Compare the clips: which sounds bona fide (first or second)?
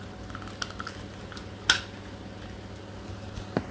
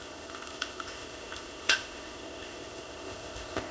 first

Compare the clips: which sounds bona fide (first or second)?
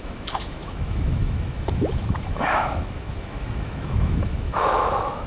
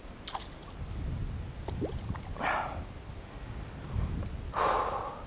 second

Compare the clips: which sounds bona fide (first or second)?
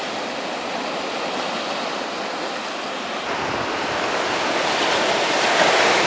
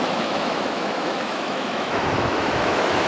first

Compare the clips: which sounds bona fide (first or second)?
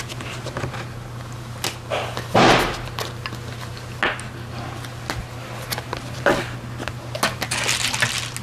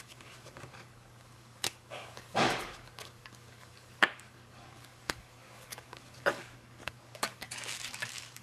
first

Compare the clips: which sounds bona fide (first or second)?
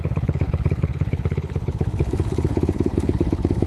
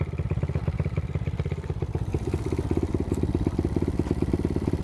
second